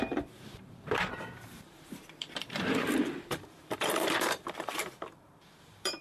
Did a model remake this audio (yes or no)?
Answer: yes